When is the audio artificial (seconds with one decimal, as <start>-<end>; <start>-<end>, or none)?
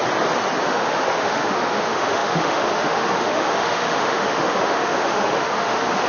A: 0.6-6.1